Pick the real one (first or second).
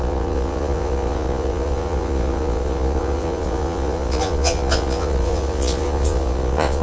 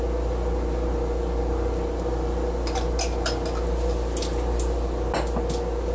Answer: second